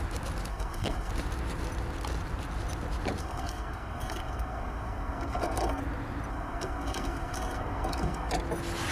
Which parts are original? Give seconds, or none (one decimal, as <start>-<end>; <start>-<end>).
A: 0.0-0.5; 1.1-3.2; 5.8-6.3; 8.3-8.9